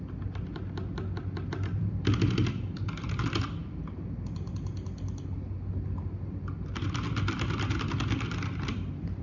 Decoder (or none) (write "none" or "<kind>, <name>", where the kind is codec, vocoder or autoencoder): none